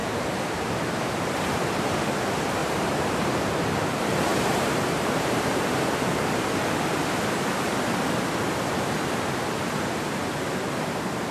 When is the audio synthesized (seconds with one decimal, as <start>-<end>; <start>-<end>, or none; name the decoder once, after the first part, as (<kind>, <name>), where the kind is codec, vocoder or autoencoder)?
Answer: 0.0-1.8 (vocoder, BigVGAN v2); 2.6-3.4; 4.3-5.9